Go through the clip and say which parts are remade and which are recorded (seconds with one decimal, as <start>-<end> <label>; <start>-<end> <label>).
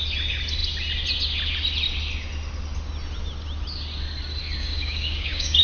0.0-4.6 recorded; 4.6-5.6 remade